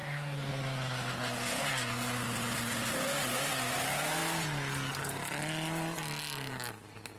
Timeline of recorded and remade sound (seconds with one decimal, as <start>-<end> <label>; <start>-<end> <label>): 0.0-0.5 remade; 0.5-7.2 recorded